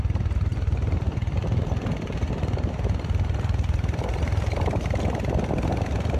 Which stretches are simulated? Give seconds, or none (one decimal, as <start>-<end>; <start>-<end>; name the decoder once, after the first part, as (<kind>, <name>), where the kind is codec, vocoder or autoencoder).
none